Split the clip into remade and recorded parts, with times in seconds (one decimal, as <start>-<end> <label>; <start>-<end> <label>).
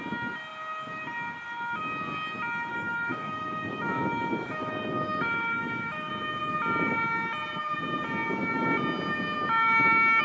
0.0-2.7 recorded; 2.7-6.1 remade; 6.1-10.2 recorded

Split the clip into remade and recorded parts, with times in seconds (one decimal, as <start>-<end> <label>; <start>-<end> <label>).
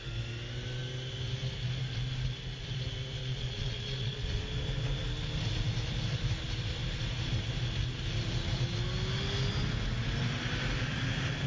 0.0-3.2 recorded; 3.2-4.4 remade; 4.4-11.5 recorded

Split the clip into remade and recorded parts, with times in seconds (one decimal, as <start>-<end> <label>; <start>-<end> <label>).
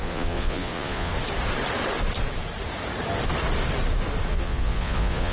0.0-1.1 remade; 1.1-4.3 recorded; 4.3-5.3 remade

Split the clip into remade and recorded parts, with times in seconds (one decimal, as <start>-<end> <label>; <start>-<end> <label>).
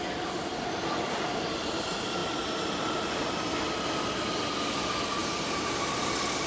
0.0-6.5 recorded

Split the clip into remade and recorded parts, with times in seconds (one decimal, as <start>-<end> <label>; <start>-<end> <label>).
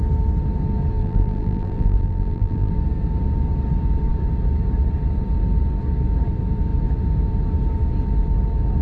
0.0-1.0 recorded; 1.0-2.7 remade; 2.7-8.8 recorded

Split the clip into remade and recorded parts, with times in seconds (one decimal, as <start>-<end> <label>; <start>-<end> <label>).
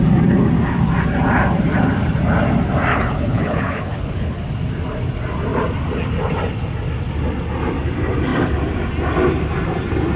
0.0-2.9 recorded; 2.9-4.4 remade; 4.4-10.2 recorded